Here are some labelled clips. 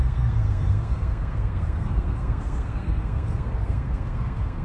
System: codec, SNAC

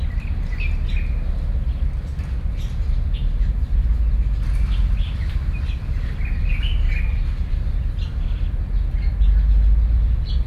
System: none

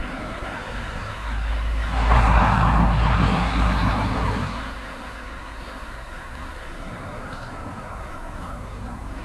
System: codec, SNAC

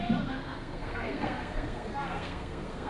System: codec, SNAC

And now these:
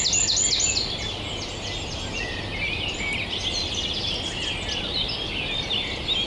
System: none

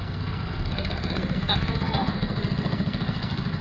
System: codec, SNAC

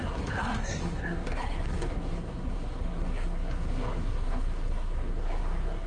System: codec, SNAC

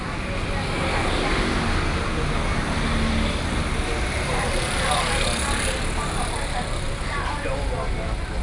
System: none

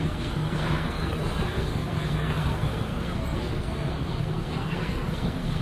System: codec, SNAC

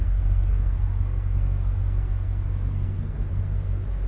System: codec, SNAC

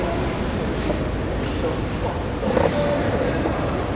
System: none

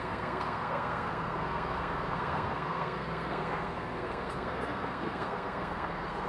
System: codec, SNAC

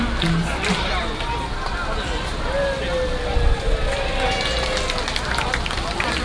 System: none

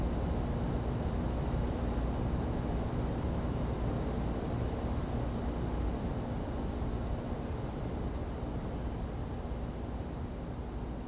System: none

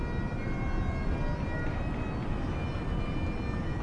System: none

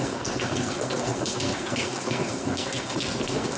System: codec, SNAC